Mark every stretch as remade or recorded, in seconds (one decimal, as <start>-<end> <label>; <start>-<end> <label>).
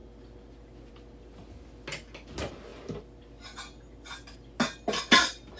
0.0-5.6 recorded